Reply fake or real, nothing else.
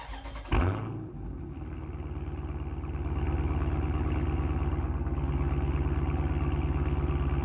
real